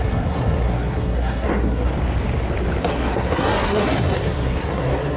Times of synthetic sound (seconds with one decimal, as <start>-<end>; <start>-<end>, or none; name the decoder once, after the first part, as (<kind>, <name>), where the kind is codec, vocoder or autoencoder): 0.0-1.9 (codec, SNAC); 2.8-5.2